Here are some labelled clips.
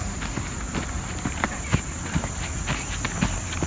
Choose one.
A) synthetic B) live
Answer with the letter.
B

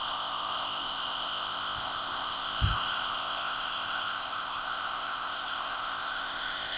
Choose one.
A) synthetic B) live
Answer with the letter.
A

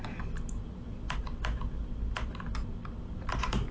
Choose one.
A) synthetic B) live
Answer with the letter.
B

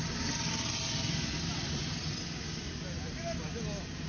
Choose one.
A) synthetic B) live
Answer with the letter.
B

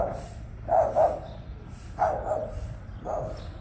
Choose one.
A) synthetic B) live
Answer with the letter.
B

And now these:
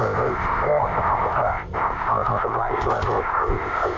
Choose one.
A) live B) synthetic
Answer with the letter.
B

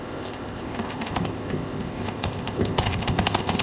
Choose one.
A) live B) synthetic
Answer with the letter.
B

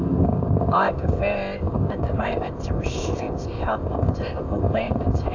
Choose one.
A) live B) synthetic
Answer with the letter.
B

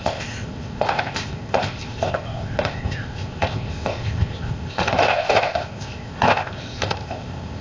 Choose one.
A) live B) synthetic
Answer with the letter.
B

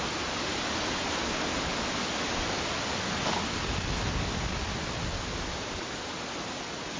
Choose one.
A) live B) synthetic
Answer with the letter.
A